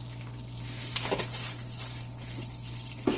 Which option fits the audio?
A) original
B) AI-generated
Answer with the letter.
A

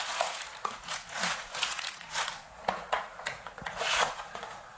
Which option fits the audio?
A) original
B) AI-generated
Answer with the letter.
B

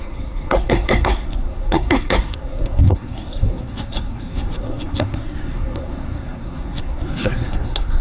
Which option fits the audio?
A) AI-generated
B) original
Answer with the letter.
A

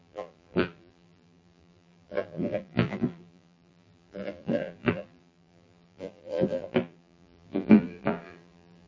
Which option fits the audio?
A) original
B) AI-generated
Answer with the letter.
B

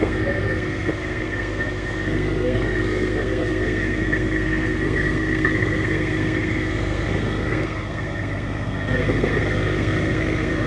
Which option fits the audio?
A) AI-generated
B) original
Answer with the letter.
A